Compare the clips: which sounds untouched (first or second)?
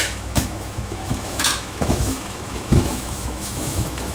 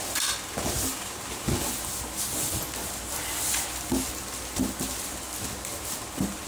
second